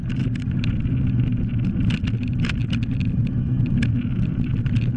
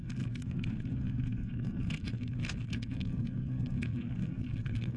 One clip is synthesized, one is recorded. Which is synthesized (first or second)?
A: second